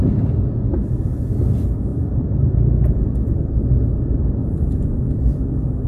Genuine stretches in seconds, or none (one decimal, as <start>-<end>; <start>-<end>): 0.0-1.9; 3.7-4.4; 5.5-5.9